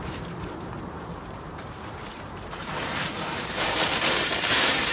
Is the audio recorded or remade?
remade